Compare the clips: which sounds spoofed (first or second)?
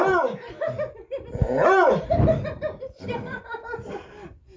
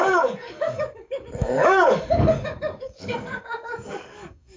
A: second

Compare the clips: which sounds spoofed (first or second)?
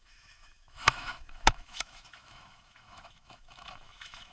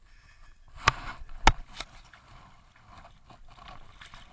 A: first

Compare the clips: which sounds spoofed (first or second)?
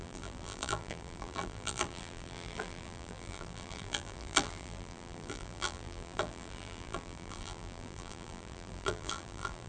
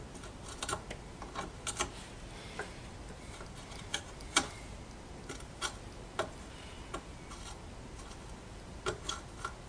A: first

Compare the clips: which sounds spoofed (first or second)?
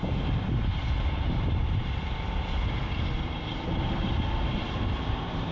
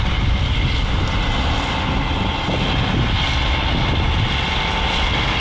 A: first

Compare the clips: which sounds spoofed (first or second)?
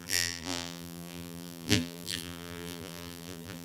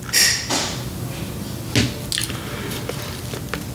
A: first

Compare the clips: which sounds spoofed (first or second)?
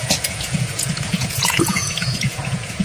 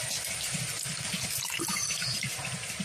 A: first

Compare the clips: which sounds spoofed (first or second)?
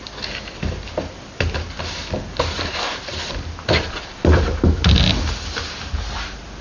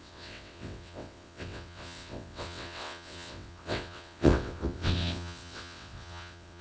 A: second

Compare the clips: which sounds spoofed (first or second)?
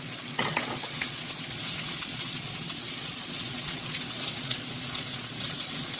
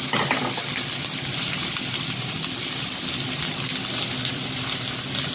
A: first